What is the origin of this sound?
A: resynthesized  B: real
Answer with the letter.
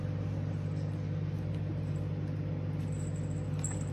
B